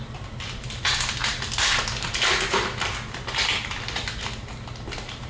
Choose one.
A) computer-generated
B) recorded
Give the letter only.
B